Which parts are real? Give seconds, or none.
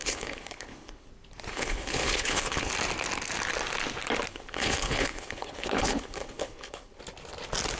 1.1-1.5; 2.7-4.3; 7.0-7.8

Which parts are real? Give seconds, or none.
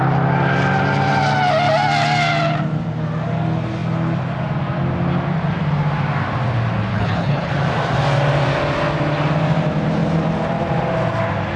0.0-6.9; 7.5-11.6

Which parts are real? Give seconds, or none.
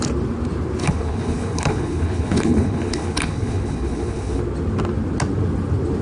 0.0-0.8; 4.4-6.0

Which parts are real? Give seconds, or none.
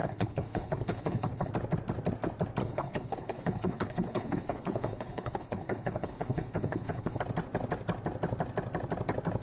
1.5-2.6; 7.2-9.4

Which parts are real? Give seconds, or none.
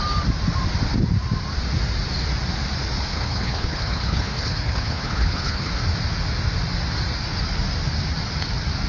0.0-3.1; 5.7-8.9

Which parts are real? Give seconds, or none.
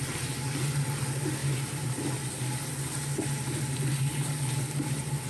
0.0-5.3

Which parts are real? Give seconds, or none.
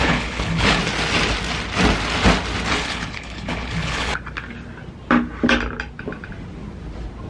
0.8-2.7; 4.1-7.3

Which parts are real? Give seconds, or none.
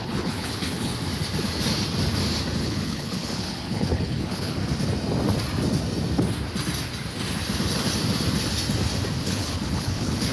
0.9-2.6; 4.6-9.2